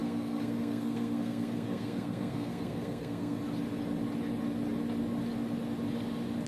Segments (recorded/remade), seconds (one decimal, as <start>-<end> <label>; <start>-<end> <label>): 0.0-3.4 remade; 3.4-6.5 recorded